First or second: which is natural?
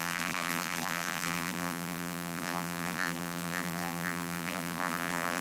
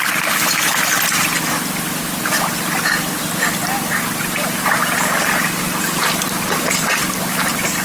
second